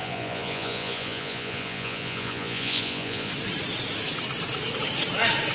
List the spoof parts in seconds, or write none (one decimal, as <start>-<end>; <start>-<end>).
0.0-3.3